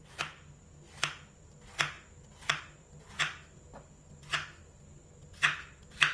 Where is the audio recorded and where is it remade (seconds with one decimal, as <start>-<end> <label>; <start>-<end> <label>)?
0.0-6.1 recorded